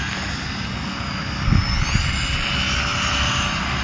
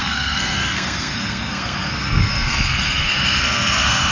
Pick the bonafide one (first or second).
first